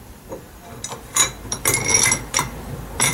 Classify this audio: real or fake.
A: fake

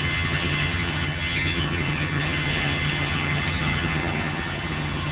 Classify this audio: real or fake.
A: fake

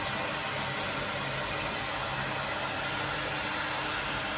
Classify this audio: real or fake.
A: real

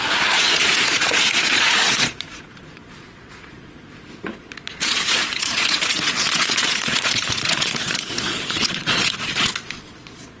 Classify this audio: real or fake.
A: fake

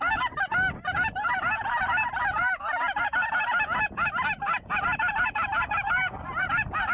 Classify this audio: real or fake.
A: real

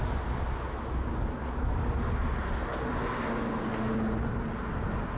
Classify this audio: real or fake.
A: real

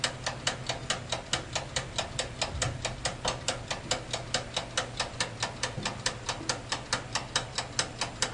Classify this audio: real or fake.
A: real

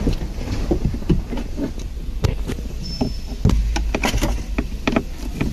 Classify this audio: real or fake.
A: real